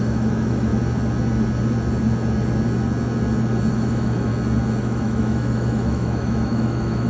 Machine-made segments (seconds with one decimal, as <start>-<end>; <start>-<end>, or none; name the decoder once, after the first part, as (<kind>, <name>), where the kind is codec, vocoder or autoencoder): 0.0-0.7 (autoencoder, DAC-VAE); 3.7-4.3; 4.8-7.1

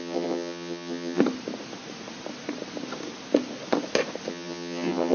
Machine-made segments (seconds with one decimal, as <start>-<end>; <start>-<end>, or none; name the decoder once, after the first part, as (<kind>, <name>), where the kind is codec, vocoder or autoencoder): 0.0-1.2 (vocoder, HiFi-GAN); 4.3-5.1

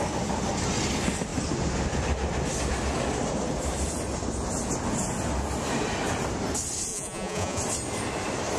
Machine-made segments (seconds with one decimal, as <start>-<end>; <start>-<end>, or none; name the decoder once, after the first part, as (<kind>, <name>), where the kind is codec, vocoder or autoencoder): 6.9-7.6 (vocoder, Vocos)

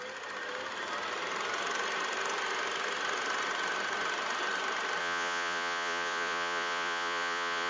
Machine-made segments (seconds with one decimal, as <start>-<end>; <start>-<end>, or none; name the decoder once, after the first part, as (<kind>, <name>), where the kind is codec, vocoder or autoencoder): 5.0-7.7 (vocoder, Vocos)

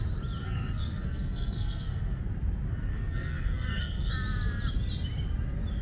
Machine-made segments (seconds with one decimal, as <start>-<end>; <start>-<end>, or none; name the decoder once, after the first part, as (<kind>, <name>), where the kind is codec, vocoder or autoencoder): 0.4-2.2 (codec, SNAC); 2.9-4.1

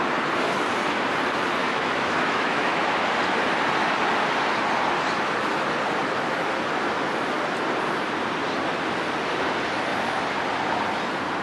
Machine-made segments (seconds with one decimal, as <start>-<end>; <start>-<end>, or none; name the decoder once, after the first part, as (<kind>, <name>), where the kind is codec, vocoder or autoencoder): 1.6-2.8 (autoencoder, DAC-VAE)

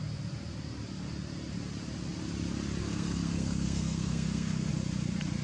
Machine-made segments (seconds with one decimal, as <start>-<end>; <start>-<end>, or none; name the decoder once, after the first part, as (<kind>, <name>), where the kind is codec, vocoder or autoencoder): 2.8-4.7 (codec, SNAC)